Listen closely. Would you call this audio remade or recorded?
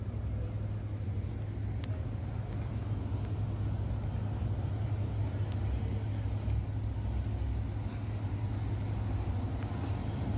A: recorded